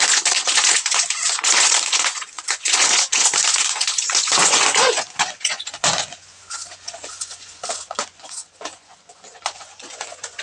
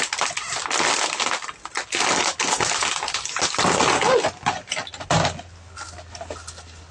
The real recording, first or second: second